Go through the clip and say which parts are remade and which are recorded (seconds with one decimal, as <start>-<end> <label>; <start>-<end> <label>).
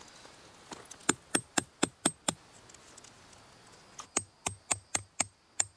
0.0-5.8 recorded